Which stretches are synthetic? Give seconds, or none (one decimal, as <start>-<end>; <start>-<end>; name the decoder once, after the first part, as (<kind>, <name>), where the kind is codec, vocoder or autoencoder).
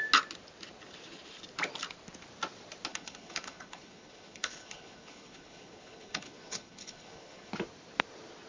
2.9-7.5 (codec, HILCodec)